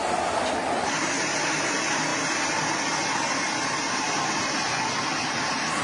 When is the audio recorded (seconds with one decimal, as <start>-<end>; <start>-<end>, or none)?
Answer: 0.0-5.8